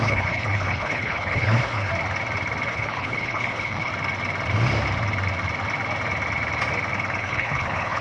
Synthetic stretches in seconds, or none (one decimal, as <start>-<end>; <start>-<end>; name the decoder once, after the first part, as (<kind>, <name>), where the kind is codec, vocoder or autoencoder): 0.0-1.9 (codec, HILCodec); 2.7-3.9; 7.2-8.0